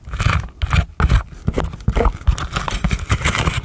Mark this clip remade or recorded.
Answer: recorded